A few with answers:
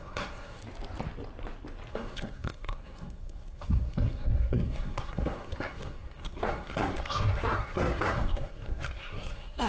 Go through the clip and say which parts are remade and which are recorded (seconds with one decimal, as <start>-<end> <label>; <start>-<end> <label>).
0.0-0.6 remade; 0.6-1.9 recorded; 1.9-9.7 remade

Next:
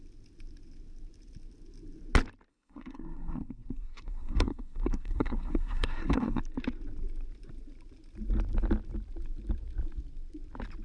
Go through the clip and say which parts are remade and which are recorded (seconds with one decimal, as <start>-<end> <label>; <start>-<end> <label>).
0.0-2.5 recorded; 2.5-6.4 remade; 6.4-10.8 recorded

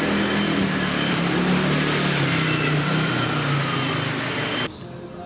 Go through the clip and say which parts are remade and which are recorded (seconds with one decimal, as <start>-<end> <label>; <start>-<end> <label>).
0.0-5.3 recorded